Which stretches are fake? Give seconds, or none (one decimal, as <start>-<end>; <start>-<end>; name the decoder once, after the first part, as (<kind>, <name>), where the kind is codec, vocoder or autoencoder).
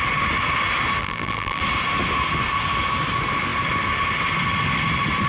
1.0-1.6 (vocoder, BigVGAN v2)